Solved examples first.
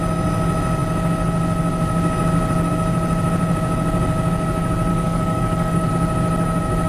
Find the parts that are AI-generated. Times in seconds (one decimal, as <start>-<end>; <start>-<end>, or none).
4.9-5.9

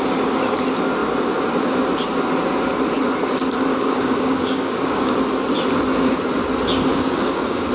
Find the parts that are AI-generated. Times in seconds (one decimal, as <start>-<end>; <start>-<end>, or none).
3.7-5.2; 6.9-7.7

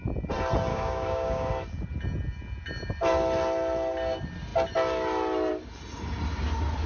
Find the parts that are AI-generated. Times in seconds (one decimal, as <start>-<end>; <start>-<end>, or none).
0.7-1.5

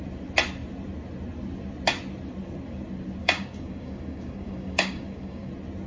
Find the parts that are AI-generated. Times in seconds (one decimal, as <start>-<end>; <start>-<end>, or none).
3.2-5.5

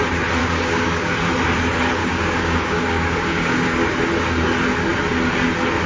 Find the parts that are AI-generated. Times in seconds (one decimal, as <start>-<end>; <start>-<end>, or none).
0.4-1.2; 2.0-3.9

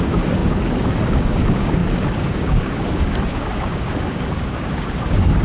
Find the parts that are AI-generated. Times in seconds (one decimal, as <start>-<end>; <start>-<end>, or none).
0.0-5.4

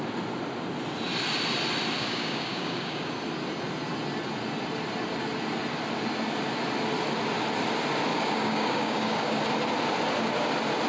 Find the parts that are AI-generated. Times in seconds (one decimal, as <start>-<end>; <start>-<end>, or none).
2.0-3.1; 8.1-9.4

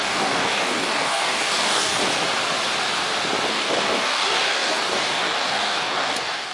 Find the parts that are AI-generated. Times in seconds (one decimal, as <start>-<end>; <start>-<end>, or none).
0.0-2.0; 3.5-6.5